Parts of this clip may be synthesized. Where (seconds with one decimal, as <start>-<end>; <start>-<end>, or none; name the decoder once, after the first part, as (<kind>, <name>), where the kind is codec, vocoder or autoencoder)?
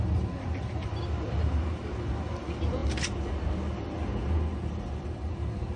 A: none